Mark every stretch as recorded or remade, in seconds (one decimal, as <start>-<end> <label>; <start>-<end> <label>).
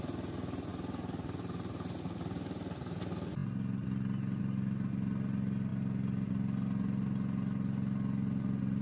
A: 0.0-8.8 recorded